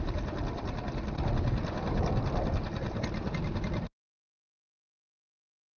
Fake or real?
real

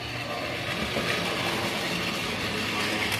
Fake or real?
real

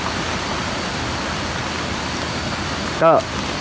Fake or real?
real